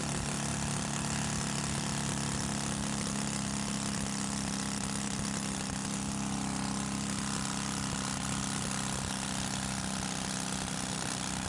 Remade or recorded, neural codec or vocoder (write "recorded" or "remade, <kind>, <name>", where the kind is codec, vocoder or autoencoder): recorded